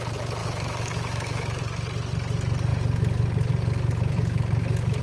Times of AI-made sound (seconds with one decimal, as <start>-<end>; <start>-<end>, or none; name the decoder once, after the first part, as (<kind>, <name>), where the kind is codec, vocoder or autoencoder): 0.4-1.6 (autoencoder, DAC-VAE)